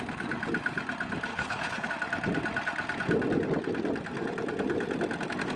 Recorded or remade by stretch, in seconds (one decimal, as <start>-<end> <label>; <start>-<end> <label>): 0.0-1.3 recorded; 1.3-1.9 remade; 1.9-5.6 recorded